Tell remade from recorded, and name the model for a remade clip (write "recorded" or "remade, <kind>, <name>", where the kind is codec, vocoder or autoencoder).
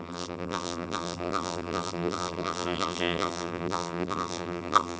remade, vocoder, BigVGAN v2